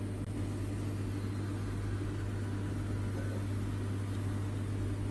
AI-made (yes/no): no